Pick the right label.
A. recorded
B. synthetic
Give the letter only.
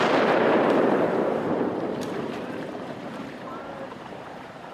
B